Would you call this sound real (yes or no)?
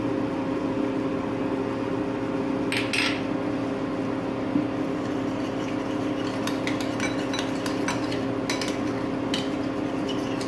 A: yes